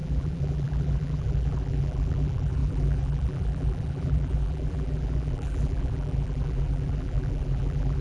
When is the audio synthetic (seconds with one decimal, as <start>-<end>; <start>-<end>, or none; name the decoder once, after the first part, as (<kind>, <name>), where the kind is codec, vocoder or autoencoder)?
0.0-8.0 (vocoder, BigVGAN v2)